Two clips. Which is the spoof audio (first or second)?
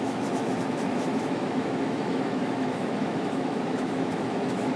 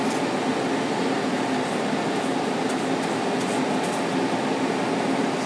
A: first